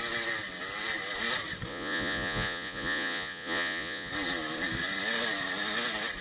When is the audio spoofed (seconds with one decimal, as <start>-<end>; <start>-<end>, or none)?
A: 1.7-4.1